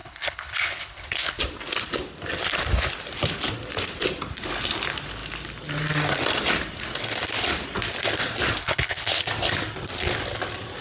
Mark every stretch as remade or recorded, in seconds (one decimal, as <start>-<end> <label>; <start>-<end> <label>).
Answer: 0.0-1.4 remade; 1.4-8.6 recorded; 8.6-9.2 remade; 9.2-10.8 recorded